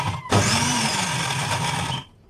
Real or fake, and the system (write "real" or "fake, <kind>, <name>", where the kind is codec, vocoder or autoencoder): real